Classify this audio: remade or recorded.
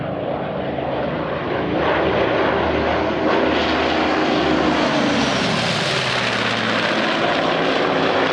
recorded